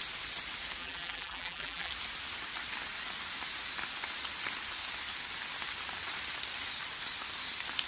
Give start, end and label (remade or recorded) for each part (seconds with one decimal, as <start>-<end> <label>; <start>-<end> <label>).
0.0-0.8 recorded; 0.8-1.9 remade; 1.9-7.9 recorded